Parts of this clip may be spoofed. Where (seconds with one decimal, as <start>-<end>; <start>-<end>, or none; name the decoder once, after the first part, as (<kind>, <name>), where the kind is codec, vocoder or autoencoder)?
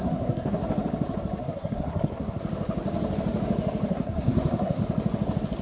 0.0-0.6 (codec, SNAC); 1.4-2.4; 3.9-4.8